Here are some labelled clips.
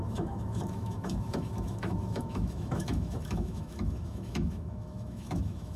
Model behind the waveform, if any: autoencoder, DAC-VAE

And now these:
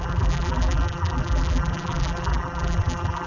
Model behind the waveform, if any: vocoder, BigVGAN v2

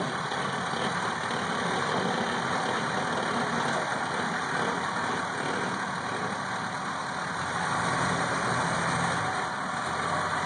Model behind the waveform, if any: none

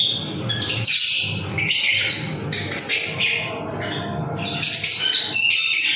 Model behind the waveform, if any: none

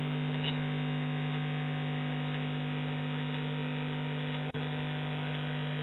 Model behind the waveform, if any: autoencoder, DAC-VAE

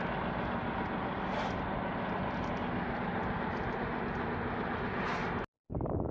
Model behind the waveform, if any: none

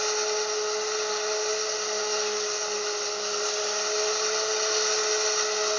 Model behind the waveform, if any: none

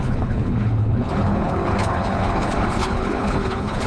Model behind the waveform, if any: codec, HILCodec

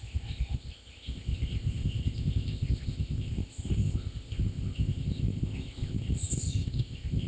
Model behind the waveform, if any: codec, ZipCodec